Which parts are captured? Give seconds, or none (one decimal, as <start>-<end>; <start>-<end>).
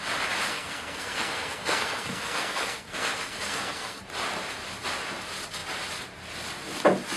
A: 0.0-0.5; 4.0-7.2